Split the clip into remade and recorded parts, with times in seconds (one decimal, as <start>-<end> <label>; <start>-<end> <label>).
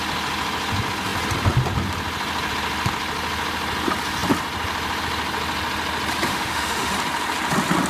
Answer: 0.0-6.3 recorded; 6.3-6.9 remade; 6.9-7.9 recorded